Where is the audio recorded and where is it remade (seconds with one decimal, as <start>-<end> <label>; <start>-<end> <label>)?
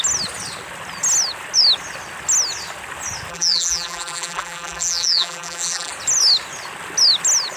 0.0-3.3 recorded; 3.3-5.9 remade; 5.9-7.6 recorded